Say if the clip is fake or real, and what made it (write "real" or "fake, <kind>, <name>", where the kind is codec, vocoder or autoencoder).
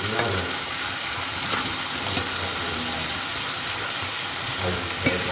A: real